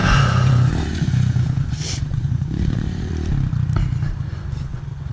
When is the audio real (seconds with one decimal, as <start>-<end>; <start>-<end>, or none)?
3.1-4.3